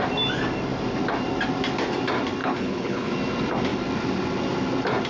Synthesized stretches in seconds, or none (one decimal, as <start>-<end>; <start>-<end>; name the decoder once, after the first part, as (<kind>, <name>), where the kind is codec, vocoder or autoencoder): 2.4-3.1 (codec, HILCodec)